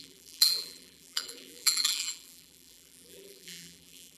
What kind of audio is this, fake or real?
fake